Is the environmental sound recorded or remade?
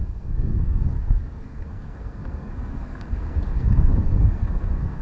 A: remade